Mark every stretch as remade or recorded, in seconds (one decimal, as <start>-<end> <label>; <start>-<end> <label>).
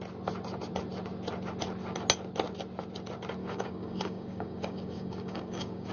0.0-3.4 recorded; 3.4-5.9 remade